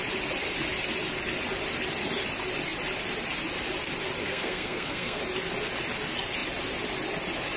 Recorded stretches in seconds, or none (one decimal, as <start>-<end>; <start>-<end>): 0.0-4.2; 5.2-7.6